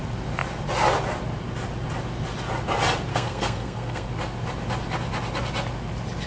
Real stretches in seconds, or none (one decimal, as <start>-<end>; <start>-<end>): 0.0-3.1; 4.1-6.3